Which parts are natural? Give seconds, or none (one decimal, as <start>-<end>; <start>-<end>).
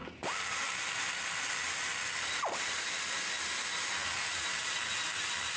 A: 0.0-4.0; 4.5-5.6